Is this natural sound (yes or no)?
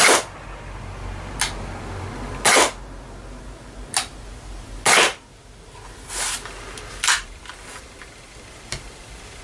yes